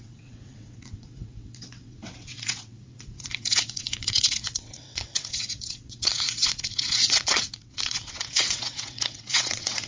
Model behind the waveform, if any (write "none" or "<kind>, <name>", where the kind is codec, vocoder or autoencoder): vocoder, WaveNeXt